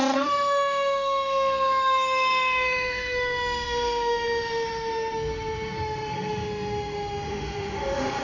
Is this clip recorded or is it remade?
remade